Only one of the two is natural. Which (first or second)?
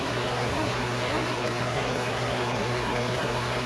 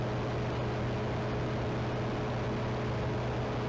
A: second